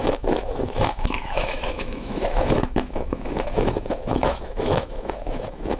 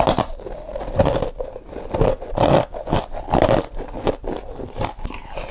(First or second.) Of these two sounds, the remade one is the first